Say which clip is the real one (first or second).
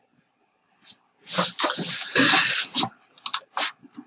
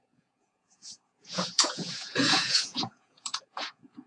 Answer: first